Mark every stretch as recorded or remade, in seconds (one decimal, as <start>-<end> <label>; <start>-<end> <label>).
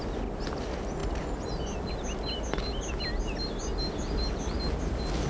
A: 0.0-5.3 recorded